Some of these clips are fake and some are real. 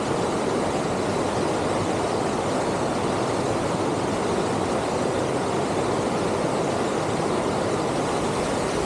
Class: real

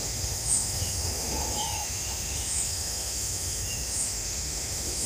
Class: fake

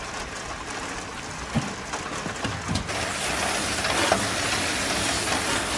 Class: real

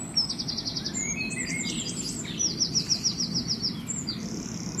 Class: real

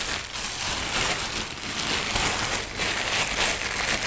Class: real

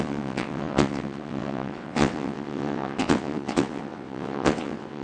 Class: fake